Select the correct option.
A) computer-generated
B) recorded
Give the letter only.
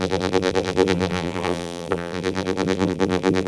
A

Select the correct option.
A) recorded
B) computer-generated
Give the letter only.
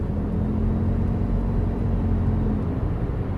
A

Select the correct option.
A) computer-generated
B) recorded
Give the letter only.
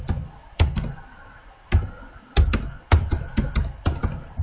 B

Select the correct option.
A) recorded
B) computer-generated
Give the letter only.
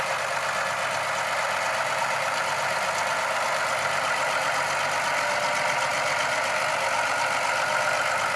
A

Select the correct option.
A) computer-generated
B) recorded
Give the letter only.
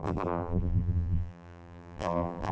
A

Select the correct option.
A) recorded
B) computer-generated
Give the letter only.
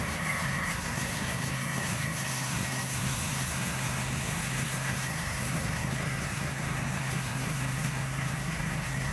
B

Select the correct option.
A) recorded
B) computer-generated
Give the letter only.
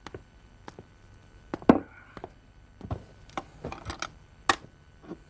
A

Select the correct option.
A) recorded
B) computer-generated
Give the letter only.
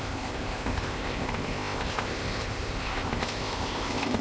B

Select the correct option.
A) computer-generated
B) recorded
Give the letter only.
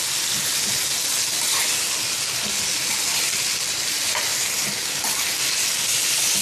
B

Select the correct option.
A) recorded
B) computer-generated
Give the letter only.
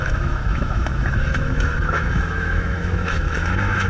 B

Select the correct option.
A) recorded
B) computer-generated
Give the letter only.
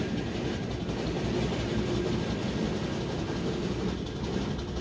A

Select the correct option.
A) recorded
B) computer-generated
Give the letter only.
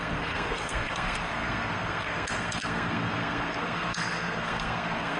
B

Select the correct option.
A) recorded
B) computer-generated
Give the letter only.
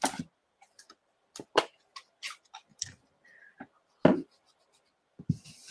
A